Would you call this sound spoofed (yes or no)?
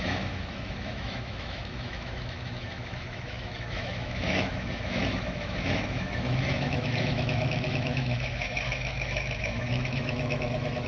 yes